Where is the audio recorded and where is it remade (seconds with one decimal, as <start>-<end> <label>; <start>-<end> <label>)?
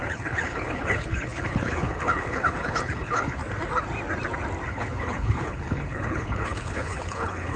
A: 0.0-3.4 remade; 3.4-4.7 recorded; 4.7-7.6 remade